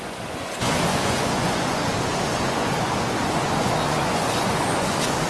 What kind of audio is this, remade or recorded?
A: remade